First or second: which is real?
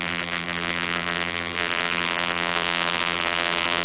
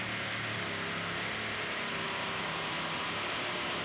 second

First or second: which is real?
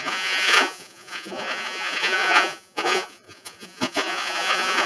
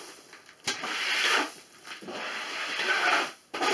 second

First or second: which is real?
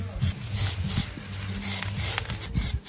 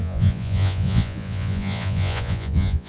first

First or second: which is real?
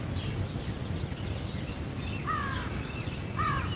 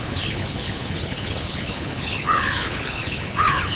first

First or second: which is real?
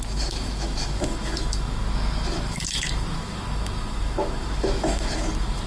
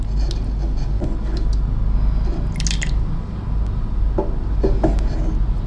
second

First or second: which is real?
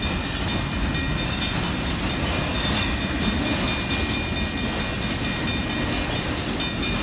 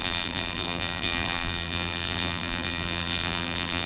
first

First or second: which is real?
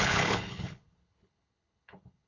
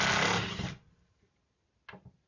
second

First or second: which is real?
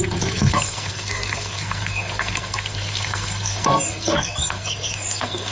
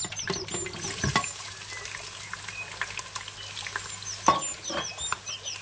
second